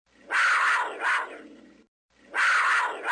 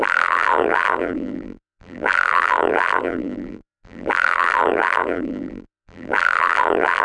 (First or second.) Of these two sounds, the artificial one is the second